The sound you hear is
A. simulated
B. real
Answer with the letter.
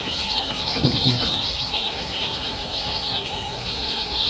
A